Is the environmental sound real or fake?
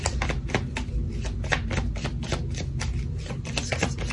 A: real